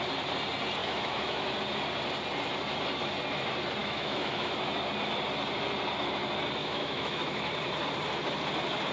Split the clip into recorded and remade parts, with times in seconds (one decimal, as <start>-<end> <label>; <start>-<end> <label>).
0.0-0.8 recorded; 0.8-1.5 remade; 1.5-3.8 recorded; 3.8-4.5 remade; 4.5-6.6 recorded; 6.6-7.5 remade; 7.5-8.9 recorded